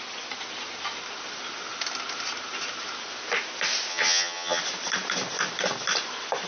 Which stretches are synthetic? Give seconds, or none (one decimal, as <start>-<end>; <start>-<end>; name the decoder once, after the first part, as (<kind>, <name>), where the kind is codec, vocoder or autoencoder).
3.9-4.6 (vocoder, HiFi-GAN)